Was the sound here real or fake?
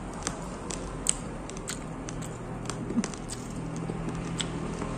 real